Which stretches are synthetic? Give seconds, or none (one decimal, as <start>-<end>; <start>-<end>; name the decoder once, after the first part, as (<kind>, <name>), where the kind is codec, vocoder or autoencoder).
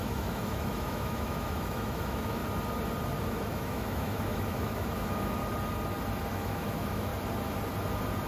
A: 0.0-2.4 (autoencoder, DAC-VAE); 3.2-5.4; 6.3-7.1